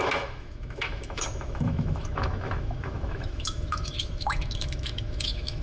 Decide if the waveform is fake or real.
fake